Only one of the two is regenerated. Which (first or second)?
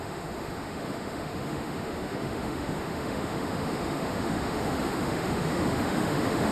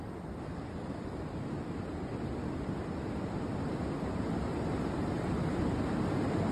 first